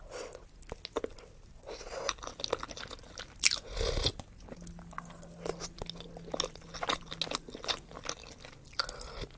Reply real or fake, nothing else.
real